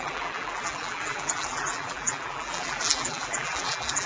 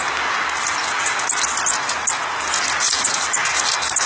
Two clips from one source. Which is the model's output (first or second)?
first